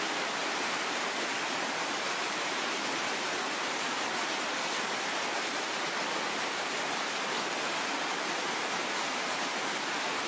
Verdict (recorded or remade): recorded